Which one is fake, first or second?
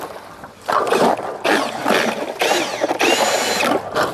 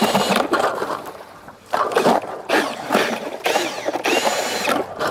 second